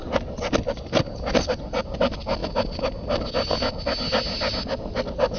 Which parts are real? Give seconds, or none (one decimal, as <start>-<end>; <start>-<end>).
0.0-5.4